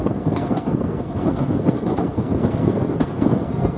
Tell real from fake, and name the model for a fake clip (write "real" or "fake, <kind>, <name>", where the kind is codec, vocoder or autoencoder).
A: fake, codec, SNAC